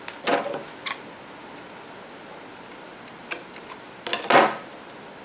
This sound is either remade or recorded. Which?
recorded